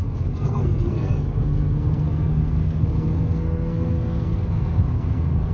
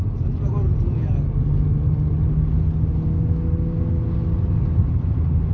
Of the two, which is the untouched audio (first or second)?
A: second